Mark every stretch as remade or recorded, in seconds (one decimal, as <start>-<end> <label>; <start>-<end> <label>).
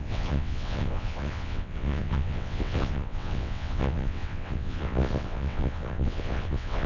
0.0-6.9 remade